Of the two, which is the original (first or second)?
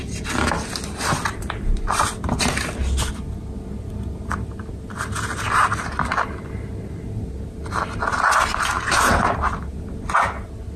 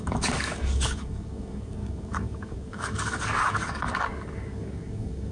first